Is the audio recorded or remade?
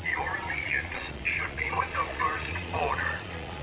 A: remade